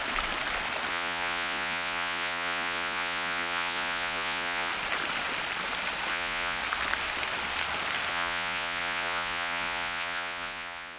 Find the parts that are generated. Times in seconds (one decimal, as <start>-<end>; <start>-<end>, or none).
0.9-4.7; 6.1-6.6; 8.1-11.0